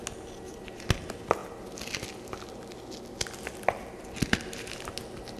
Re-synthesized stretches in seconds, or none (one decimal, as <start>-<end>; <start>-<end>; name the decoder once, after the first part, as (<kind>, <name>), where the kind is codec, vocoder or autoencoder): none